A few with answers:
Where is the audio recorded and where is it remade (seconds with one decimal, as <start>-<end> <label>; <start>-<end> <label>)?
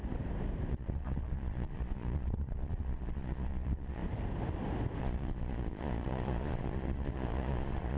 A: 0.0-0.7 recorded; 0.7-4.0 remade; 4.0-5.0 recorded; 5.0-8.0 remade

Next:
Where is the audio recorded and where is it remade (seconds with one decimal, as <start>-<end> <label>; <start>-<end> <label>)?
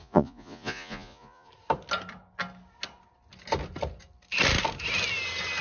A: 0.0-1.5 remade; 1.5-5.6 recorded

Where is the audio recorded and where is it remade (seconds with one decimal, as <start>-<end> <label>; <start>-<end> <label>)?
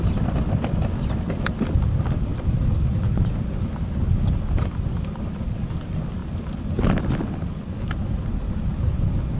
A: 0.0-9.4 recorded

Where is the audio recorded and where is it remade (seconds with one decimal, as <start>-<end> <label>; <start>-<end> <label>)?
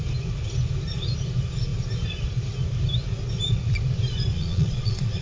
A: 0.0-4.3 recorded; 4.3-5.2 remade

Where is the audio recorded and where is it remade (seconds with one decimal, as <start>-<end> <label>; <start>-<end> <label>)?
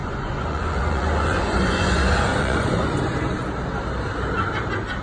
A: 0.0-3.0 remade; 3.0-5.0 recorded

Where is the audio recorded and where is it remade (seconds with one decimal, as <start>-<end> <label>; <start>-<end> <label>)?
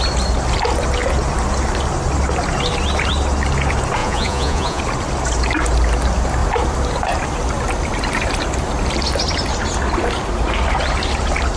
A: 0.0-4.0 recorded; 4.0-4.8 remade; 4.8-11.6 recorded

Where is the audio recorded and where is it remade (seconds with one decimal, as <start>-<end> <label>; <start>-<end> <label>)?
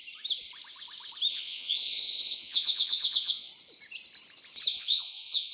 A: 0.0-1.3 recorded; 1.3-3.5 remade; 3.5-4.7 recorded; 4.7-5.5 remade